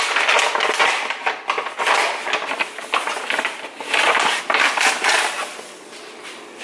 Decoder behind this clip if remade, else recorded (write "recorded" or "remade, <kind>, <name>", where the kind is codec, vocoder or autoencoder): recorded